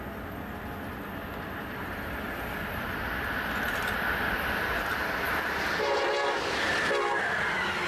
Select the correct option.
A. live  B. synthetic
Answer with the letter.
A